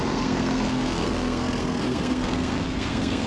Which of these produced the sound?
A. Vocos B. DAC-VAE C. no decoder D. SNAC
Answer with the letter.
D